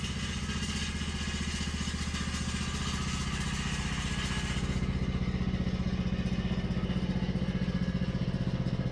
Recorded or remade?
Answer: recorded